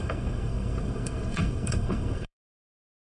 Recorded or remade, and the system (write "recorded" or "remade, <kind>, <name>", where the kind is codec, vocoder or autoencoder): remade, codec, SNAC